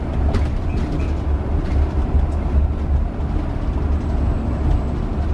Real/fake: real